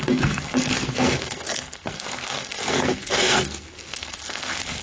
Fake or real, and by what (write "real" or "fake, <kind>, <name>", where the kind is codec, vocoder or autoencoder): fake, codec, SNAC